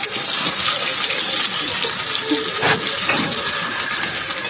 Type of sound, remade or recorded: recorded